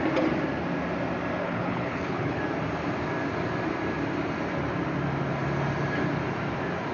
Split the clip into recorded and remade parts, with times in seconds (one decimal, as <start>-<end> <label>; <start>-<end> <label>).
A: 0.0-1.4 recorded; 1.4-2.4 remade; 2.4-6.9 recorded